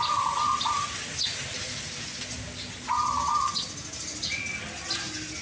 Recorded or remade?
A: recorded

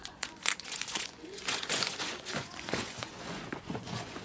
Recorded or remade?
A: remade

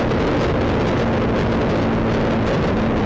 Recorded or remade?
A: recorded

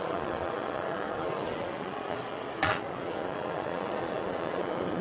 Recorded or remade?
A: remade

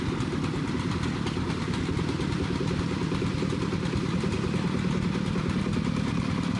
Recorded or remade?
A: recorded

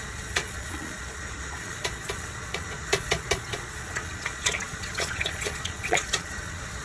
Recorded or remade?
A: remade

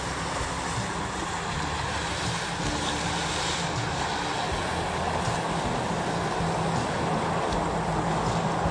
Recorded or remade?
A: recorded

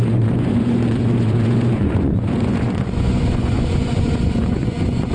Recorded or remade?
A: remade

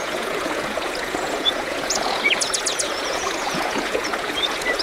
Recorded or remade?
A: remade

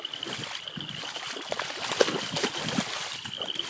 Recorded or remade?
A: recorded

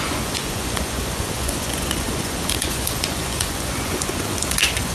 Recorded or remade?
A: remade